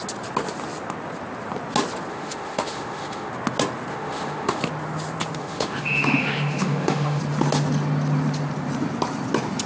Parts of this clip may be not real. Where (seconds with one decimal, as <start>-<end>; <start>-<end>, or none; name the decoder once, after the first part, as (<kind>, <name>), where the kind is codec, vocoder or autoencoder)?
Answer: 2.1-3.3 (autoencoder, DAC-VAE); 3.9-4.6; 5.4-7.2